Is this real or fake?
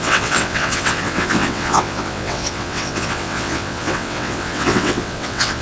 fake